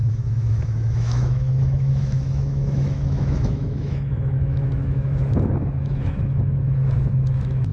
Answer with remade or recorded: remade